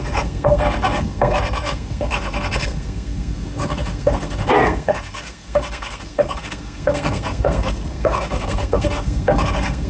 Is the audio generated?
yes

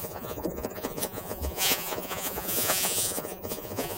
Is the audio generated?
yes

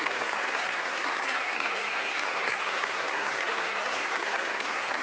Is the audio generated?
yes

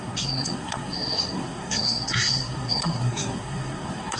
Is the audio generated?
yes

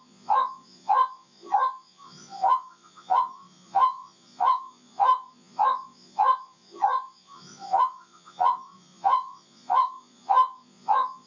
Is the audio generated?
yes